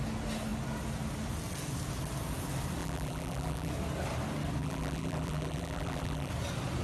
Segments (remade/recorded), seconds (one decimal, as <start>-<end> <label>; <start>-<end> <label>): 0.0-2.8 recorded; 2.8-3.7 remade; 3.7-4.6 recorded; 4.6-6.3 remade; 6.3-6.8 recorded

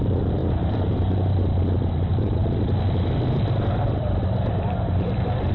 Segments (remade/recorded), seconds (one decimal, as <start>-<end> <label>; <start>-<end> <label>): 0.0-5.5 remade

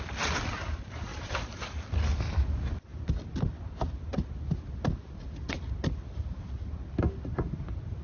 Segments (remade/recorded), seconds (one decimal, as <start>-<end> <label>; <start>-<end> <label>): 0.0-1.1 recorded; 1.1-1.6 remade; 1.6-8.0 recorded

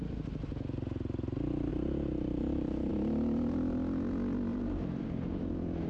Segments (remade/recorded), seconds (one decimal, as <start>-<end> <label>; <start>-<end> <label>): 0.0-1.7 recorded; 1.7-2.9 remade; 2.9-4.5 recorded; 4.5-5.5 remade; 5.5-5.9 recorded